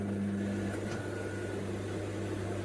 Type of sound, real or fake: real